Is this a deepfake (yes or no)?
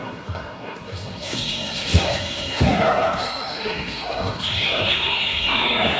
yes